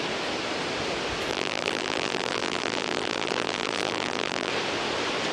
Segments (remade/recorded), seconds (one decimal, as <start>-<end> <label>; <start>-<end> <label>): 0.0-1.3 recorded; 1.3-4.5 remade; 4.5-5.3 recorded